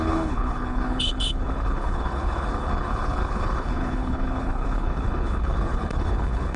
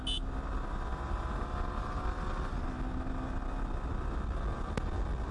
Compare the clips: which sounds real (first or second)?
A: second